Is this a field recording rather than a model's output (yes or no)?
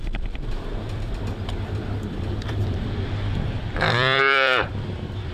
no